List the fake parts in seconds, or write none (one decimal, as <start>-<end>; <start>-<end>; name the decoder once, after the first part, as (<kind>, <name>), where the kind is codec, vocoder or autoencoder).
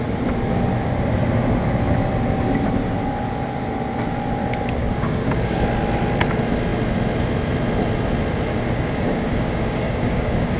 4.8-5.6 (codec, DAC); 8.5-10.6